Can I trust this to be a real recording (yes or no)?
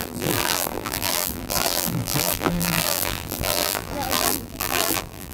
no